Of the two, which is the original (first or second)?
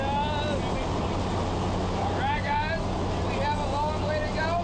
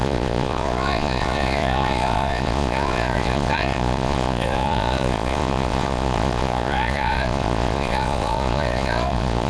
first